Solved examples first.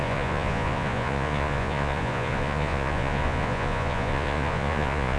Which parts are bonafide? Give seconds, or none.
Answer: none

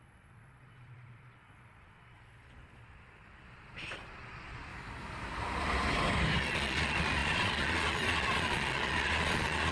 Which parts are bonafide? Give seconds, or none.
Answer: 4.7-6.4

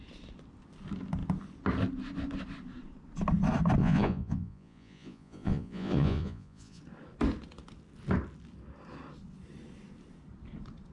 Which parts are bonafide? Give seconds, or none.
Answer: 0.0-3.8; 6.8-10.9

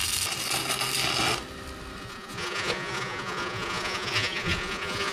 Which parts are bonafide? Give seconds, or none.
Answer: 0.0-2.0

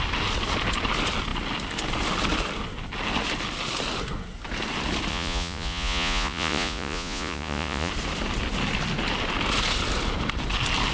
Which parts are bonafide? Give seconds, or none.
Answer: 0.0-5.1; 7.9-10.9